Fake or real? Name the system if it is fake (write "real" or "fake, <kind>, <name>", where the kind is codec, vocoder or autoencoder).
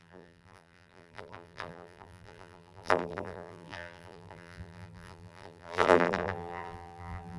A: fake, vocoder, BigVGAN v2